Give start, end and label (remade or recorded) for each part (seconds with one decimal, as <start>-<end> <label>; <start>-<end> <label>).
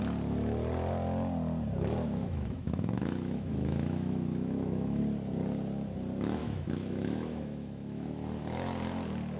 0.0-2.2 recorded; 2.2-5.0 remade; 5.0-6.4 recorded; 6.4-8.1 remade; 8.1-9.4 recorded